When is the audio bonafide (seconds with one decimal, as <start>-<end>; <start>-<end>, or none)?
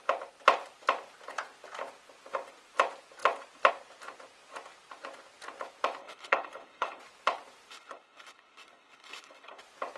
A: 0.0-6.0; 7.0-7.7; 9.6-10.0